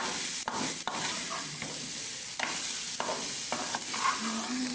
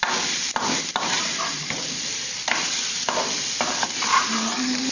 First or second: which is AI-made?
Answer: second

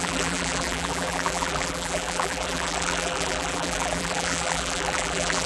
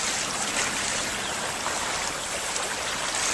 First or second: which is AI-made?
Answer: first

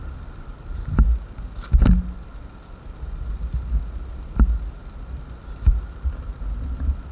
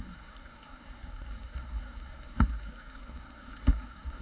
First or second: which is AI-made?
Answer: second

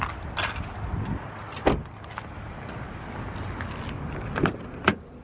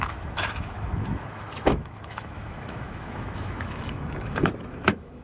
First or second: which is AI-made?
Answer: second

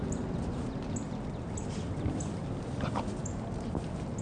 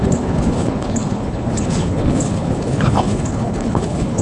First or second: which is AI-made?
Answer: second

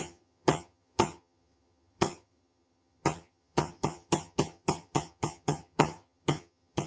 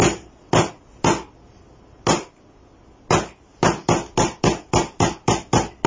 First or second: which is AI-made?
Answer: first